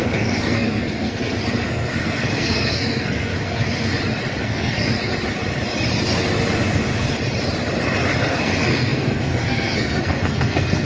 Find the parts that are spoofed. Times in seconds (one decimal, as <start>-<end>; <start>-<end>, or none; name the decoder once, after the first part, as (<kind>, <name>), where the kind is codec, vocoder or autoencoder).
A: 0.0-3.9 (codec, SNAC); 4.4-5.1; 8.3-10.9